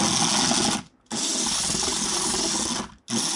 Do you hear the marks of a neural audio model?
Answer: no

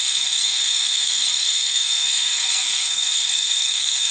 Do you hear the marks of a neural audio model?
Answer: yes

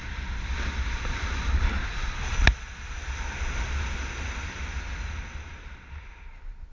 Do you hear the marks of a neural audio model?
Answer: no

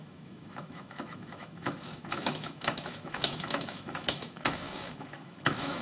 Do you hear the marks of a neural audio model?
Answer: yes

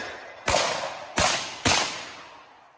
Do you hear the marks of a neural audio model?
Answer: no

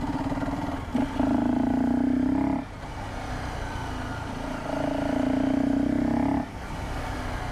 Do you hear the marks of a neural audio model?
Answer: no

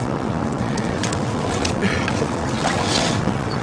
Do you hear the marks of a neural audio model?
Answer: yes